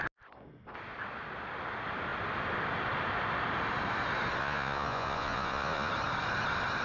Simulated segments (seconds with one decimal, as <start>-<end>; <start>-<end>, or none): 4.4-5.9